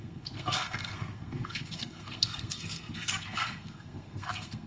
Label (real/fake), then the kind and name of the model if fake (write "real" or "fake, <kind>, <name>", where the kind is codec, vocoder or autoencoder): fake, codec, SNAC